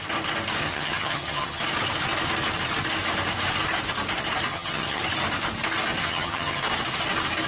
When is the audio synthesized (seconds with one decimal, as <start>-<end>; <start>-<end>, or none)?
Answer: 0.6-1.6; 4.5-5.0; 6.0-6.6